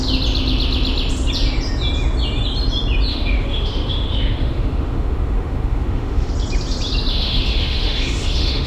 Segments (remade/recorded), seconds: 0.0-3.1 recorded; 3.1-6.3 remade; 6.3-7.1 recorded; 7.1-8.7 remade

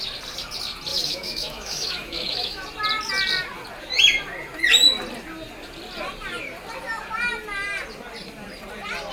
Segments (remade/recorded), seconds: 0.0-0.9 recorded; 0.9-2.6 remade; 2.6-9.1 recorded

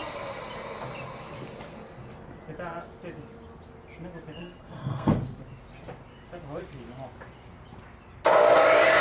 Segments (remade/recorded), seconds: 0.0-4.4 recorded; 4.4-5.1 remade; 5.1-9.0 recorded